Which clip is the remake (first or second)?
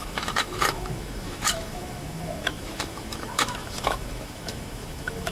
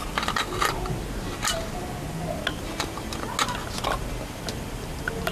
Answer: first